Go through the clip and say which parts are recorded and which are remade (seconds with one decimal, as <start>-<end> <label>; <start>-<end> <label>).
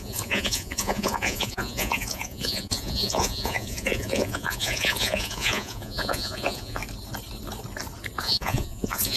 0.0-6.8 remade; 6.8-8.2 recorded; 8.2-9.2 remade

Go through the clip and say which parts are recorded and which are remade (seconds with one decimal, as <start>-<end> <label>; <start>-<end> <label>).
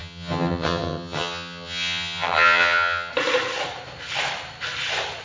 0.0-3.1 remade; 3.1-5.2 recorded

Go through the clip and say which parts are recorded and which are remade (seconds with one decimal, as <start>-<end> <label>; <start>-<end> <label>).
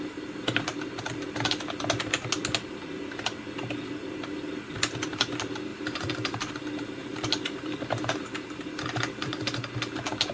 0.0-5.7 recorded; 5.7-6.6 remade; 6.6-7.0 recorded; 7.0-9.6 remade; 9.6-10.3 recorded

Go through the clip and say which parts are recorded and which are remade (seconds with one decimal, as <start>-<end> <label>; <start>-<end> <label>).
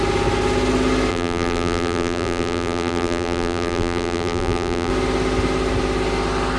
0.0-1.1 recorded; 1.1-4.9 remade; 4.9-6.6 recorded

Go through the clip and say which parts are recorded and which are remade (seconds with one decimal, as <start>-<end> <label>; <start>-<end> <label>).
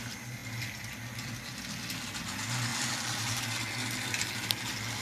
0.0-2.7 recorded; 2.7-3.3 remade; 3.3-5.0 recorded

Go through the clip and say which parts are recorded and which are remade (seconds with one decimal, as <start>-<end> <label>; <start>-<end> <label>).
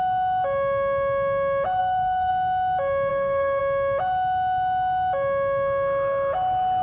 0.0-1.8 recorded; 1.8-2.3 remade; 2.3-3.1 recorded; 3.1-3.6 remade; 3.6-6.8 recorded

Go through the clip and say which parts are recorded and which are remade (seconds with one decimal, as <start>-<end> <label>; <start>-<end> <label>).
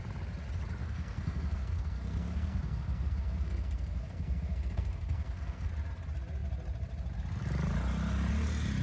0.0-0.8 recorded; 0.8-5.7 remade; 5.7-8.8 recorded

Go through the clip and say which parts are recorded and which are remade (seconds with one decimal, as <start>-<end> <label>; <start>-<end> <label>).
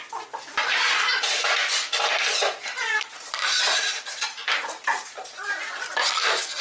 0.0-6.6 recorded